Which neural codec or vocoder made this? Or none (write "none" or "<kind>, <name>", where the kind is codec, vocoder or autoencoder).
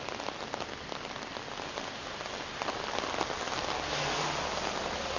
none